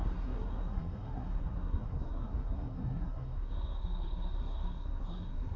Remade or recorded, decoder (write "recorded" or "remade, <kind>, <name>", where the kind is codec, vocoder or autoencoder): remade, codec, SNAC